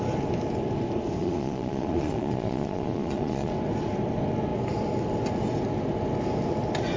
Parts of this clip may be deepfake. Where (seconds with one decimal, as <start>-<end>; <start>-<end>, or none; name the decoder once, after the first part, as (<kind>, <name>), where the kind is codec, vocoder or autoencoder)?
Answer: 1.2-3.5 (vocoder, Vocos)